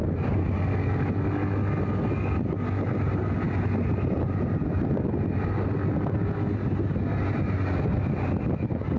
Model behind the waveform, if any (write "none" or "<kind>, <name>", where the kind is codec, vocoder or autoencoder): none